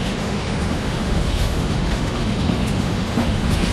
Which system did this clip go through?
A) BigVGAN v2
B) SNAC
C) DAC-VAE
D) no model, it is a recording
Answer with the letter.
C